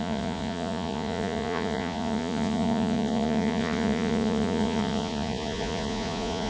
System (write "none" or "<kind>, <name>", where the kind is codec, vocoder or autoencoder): vocoder, Vocos